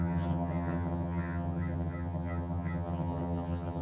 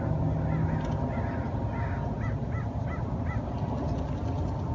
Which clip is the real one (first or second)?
second